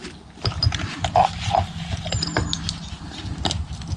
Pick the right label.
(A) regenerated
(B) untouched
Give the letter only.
B